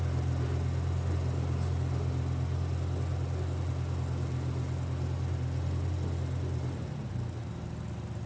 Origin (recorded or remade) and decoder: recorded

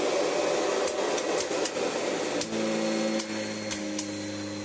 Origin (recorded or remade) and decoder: recorded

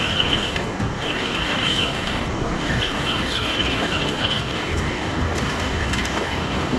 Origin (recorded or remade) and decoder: remade, codec, DAC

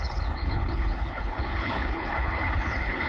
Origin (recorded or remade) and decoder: remade, codec, HILCodec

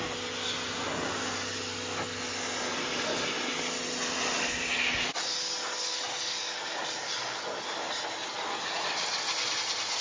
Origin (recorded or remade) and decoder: recorded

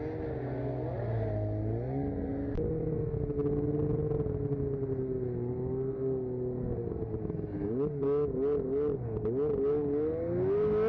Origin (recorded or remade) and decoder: recorded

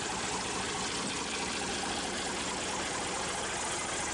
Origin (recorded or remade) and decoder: recorded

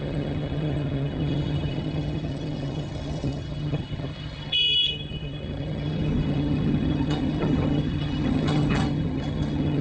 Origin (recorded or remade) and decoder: remade, vocoder, HiFi-GAN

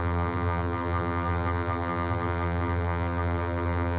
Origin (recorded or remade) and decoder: remade, vocoder, BigVGAN v2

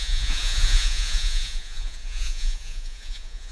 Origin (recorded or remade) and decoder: remade, vocoder, Vocos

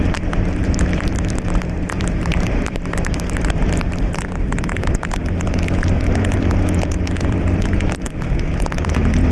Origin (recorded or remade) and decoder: remade, vocoder, BigVGAN v2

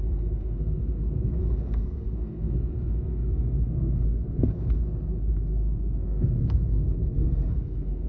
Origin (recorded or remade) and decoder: remade, codec, SNAC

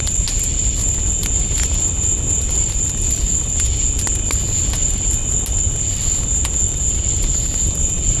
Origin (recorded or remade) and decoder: recorded